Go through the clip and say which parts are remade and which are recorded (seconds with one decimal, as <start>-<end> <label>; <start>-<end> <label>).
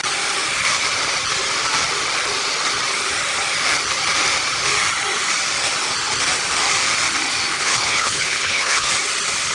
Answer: 0.0-7.5 recorded; 7.5-8.9 remade; 8.9-9.5 recorded